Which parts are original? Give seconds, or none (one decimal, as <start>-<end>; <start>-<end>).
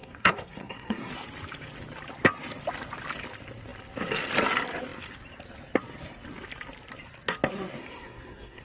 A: 1.1-7.8